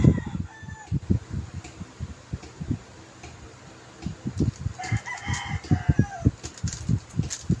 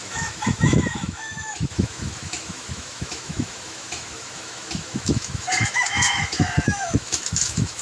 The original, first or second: first